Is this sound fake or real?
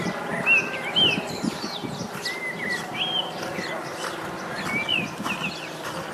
real